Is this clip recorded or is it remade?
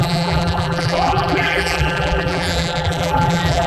remade